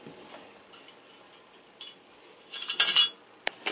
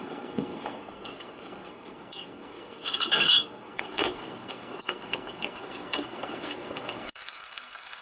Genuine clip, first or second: first